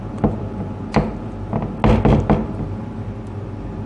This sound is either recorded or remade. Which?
recorded